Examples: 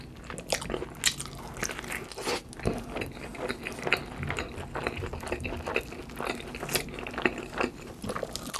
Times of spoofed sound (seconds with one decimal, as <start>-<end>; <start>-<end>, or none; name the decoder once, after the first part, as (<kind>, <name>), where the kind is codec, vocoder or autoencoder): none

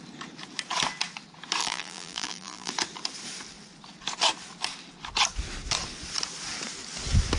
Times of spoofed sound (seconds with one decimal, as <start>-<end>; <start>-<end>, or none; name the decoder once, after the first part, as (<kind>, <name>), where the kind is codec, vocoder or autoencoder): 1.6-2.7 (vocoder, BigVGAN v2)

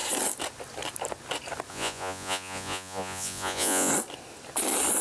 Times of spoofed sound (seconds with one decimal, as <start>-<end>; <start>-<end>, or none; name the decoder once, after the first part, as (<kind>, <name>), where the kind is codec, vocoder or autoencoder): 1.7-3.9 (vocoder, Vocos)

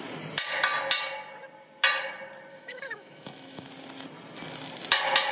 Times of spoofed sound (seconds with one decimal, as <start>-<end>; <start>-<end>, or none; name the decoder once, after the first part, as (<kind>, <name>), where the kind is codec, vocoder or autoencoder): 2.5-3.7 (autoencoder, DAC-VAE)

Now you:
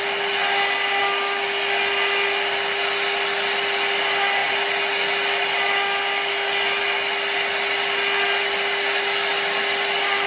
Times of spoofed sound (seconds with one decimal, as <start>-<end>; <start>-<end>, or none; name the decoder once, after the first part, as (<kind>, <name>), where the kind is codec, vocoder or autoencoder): none

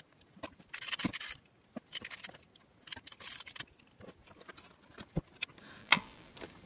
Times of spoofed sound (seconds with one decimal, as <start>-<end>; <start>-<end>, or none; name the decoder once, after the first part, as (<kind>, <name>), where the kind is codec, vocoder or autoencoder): 5.8-6.3 (vocoder, BigVGAN v2)